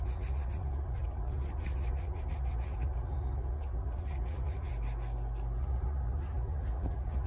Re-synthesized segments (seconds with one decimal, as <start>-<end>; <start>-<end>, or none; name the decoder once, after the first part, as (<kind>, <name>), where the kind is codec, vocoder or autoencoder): 0.0-4.7 (vocoder, Vocos); 5.6-7.3